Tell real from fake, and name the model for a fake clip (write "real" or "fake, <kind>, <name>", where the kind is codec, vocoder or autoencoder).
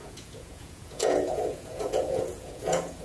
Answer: fake, vocoder, Vocos